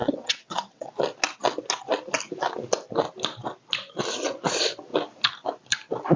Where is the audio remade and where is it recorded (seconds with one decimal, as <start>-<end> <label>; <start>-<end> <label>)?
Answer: 0.0-0.9 remade; 0.9-6.2 recorded